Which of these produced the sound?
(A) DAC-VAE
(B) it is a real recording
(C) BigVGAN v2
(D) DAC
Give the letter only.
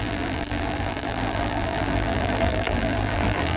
C